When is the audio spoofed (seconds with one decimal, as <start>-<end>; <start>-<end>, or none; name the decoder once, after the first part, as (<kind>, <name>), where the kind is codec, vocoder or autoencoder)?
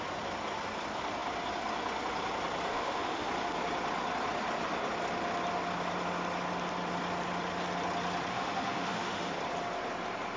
2.7-3.3 (autoencoder, DAC-VAE); 8.3-9.3